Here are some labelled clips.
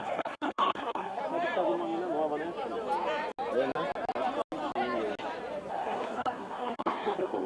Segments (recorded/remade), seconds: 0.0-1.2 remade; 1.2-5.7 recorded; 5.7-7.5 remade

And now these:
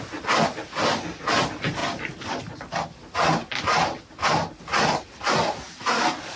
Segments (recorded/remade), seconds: 0.0-6.4 recorded

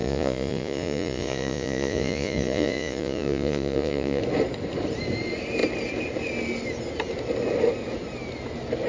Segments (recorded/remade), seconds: 0.0-4.2 remade; 4.2-8.9 recorded

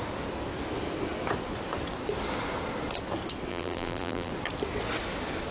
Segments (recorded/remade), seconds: 0.0-3.5 recorded; 3.5-4.3 remade; 4.3-5.5 recorded

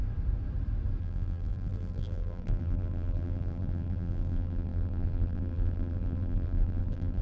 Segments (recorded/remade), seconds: 0.0-1.0 recorded; 1.0-7.2 remade

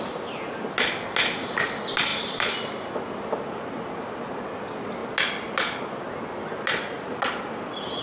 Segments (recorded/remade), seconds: 0.0-8.0 recorded

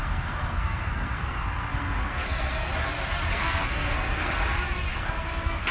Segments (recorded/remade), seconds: 0.0-2.7 remade; 2.7-3.3 recorded; 3.3-4.4 remade; 4.4-4.9 recorded; 4.9-5.7 remade